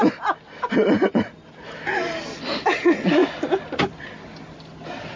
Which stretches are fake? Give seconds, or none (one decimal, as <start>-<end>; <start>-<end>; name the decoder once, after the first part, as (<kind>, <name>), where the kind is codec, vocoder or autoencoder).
none